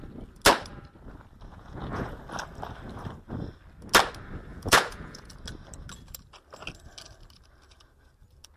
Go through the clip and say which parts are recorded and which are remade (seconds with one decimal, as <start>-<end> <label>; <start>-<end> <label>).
0.0-1.5 recorded; 1.5-2.2 remade; 2.2-4.5 recorded; 4.5-5.3 remade; 5.3-8.6 recorded